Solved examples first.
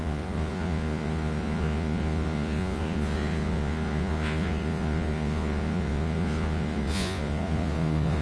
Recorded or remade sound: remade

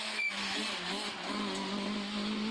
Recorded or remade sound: recorded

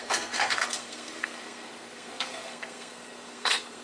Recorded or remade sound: remade